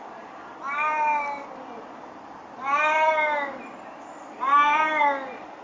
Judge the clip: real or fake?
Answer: real